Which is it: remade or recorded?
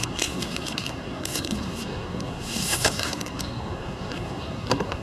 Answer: remade